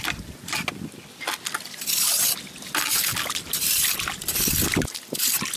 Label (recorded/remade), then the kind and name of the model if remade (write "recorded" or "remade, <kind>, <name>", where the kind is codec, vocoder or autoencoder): recorded